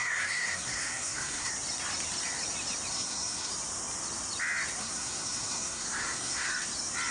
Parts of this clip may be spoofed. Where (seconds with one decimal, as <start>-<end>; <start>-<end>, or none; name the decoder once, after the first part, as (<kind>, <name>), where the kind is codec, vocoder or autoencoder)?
0.0-1.5 (codec, SNAC); 2.9-3.5; 4.8-6.5